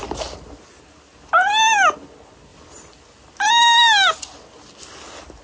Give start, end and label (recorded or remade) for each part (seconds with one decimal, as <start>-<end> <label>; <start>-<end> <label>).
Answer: 0.0-0.5 remade; 0.5-2.5 recorded; 2.5-3.5 remade; 3.5-5.4 recorded